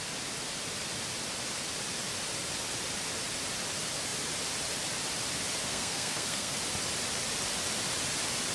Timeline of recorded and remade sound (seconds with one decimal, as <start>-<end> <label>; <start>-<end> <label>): 0.0-5.6 recorded; 5.6-6.6 remade; 6.6-8.5 recorded